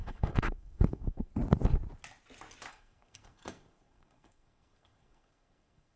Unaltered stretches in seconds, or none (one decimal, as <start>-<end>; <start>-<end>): 1.3-2.7

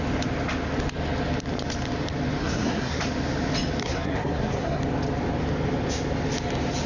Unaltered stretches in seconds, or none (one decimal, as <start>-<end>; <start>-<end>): 0.0-2.4; 3.0-3.8; 4.8-6.9

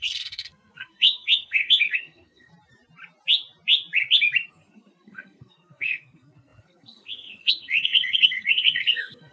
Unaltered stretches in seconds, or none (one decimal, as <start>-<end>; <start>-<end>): 2.5-4.5